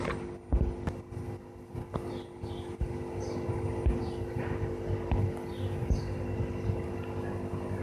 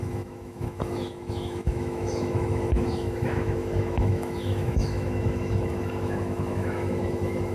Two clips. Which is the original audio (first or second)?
first